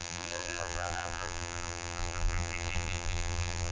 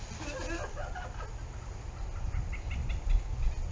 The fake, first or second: first